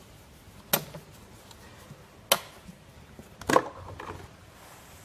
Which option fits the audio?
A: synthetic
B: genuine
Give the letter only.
B